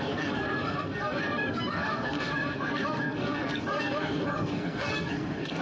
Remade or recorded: remade